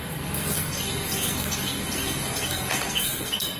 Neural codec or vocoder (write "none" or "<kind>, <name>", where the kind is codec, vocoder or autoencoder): codec, SNAC